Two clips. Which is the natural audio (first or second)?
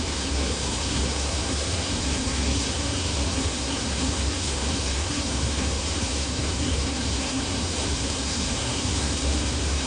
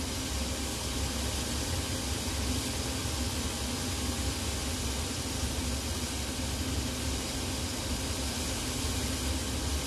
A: second